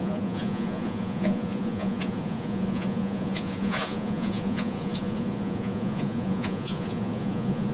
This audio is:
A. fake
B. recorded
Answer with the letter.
A